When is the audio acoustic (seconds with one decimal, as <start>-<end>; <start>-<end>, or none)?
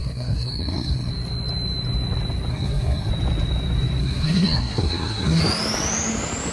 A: 1.1-2.5; 3.1-4.0; 5.4-6.5